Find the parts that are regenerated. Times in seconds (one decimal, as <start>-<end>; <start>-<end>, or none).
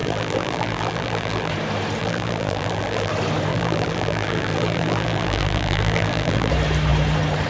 0.0-1.5; 2.0-3.1; 3.5-6.5